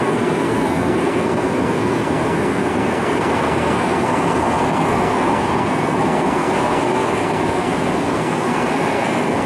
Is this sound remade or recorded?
remade